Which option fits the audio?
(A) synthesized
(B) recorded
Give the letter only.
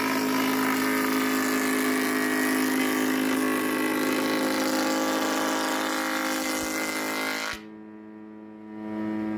B